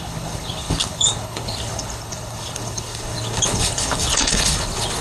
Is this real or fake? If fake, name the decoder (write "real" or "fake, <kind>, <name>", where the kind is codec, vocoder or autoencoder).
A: fake, codec, HILCodec